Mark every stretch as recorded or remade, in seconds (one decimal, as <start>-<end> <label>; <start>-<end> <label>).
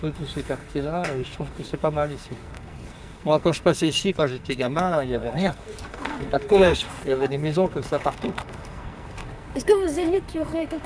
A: 0.0-10.9 remade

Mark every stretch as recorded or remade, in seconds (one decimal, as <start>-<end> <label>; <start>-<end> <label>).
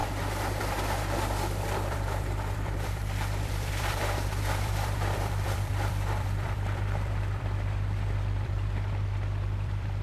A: 0.0-0.6 recorded; 0.6-10.0 remade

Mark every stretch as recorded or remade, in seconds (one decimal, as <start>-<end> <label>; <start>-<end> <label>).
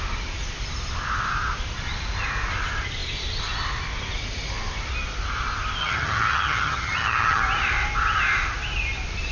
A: 0.0-5.8 recorded; 5.8-7.4 remade; 7.4-9.3 recorded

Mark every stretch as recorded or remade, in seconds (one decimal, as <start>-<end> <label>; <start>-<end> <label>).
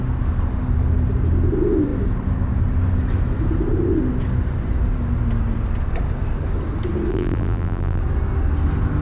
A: 0.0-7.1 recorded; 7.1-8.0 remade; 8.0-9.0 recorded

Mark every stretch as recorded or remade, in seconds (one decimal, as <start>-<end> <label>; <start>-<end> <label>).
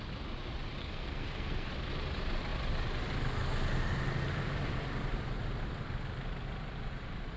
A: 0.0-0.8 recorded; 0.8-1.7 remade; 1.7-7.4 recorded